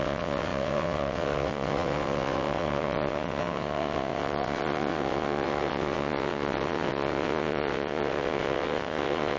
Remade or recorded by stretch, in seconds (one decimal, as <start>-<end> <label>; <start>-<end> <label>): 0.0-9.4 remade